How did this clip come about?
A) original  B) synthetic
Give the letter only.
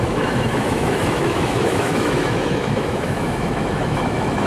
B